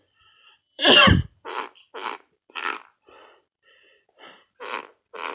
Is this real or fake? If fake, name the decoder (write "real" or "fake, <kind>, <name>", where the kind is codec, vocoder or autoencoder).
fake, vocoder, BigVGAN v2